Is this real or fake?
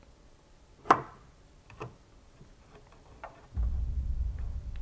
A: real